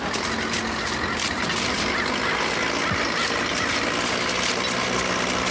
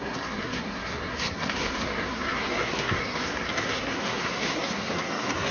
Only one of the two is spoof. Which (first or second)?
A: second